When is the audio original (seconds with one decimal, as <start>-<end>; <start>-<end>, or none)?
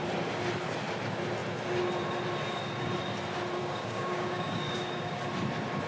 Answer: 0.0-3.6; 5.2-5.9